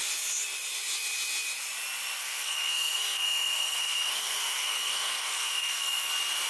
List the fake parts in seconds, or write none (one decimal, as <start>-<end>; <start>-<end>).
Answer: 2.2-6.1